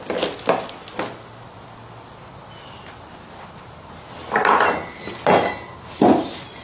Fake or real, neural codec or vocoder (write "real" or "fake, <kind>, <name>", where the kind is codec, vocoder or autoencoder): real